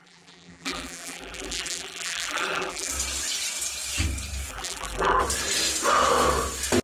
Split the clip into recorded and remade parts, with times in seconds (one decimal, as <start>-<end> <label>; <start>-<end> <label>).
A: 0.0-2.9 remade; 2.9-4.5 recorded; 4.5-5.2 remade; 5.2-6.8 recorded